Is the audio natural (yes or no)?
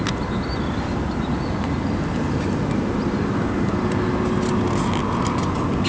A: yes